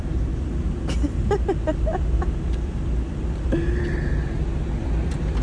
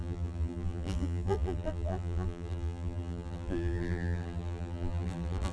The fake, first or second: second